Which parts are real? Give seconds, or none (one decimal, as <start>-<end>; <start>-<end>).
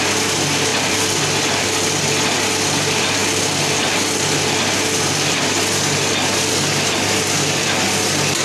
0.0-0.7; 1.2-8.4